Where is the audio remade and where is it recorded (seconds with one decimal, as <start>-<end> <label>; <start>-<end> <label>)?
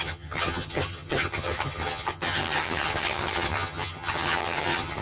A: 0.0-5.0 remade